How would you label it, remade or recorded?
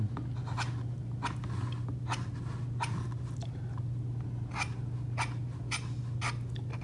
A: recorded